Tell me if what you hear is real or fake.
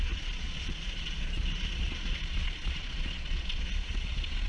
fake